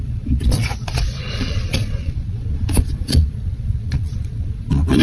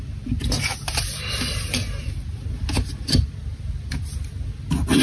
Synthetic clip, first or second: first